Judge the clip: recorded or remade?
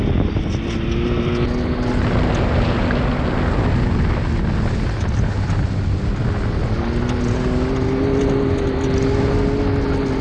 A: recorded